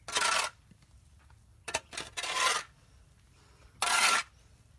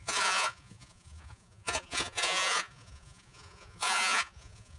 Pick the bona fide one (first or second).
first